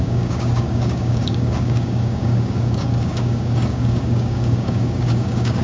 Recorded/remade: remade